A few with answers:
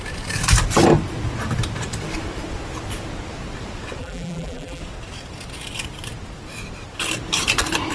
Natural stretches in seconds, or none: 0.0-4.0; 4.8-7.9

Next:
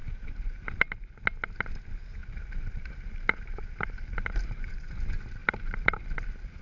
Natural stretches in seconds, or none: 0.6-2.2; 4.7-5.4; 6.1-6.6

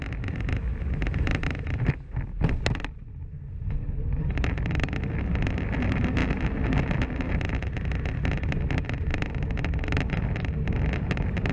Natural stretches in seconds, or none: 0.0-11.5

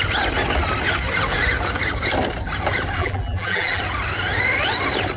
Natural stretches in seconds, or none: 0.0-3.0; 3.8-5.2

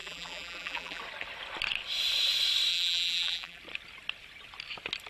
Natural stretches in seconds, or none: 1.0-2.7; 3.6-5.1

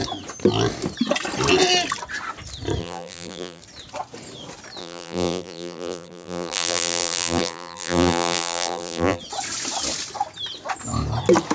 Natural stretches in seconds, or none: 0.0-2.8; 3.6-4.8; 9.2-11.5

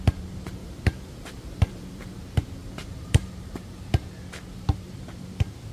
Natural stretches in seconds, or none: 0.0-0.6; 2.2-2.6; 4.0-5.7

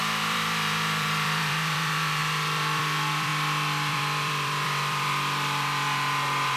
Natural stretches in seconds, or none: 3.3-3.9